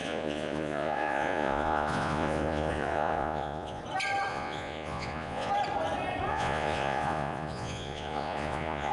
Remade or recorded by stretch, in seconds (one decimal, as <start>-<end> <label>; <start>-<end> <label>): 0.0-3.8 remade; 3.8-4.3 recorded; 4.3-5.5 remade; 5.5-6.3 recorded; 6.3-8.9 remade